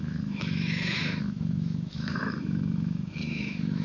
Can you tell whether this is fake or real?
fake